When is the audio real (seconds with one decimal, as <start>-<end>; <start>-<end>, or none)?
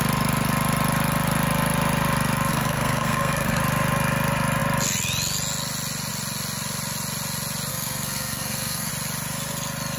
0.0-2.5; 3.6-7.7; 8.9-10.0